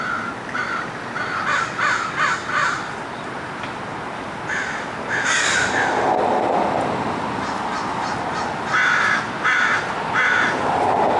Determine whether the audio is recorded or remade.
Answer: recorded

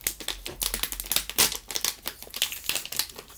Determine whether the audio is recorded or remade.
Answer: recorded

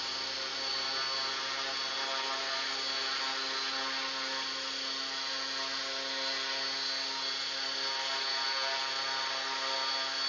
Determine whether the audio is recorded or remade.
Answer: recorded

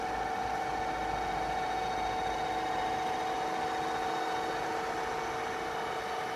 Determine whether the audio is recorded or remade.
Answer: recorded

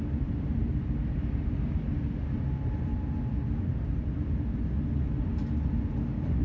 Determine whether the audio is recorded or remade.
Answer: recorded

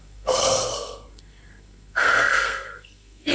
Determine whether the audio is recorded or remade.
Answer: remade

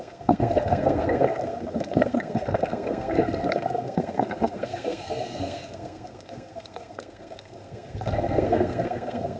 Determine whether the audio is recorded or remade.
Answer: remade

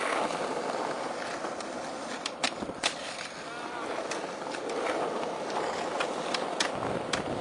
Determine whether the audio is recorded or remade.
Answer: recorded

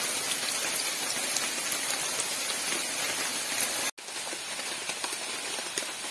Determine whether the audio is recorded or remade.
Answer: recorded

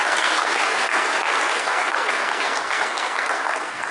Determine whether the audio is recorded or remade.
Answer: remade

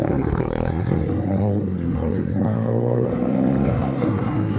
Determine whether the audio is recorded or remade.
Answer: remade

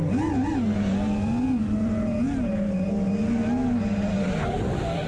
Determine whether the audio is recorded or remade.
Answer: recorded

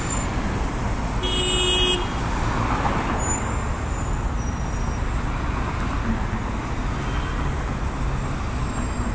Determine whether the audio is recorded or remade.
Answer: recorded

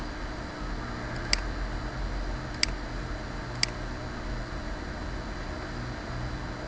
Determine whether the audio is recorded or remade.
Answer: recorded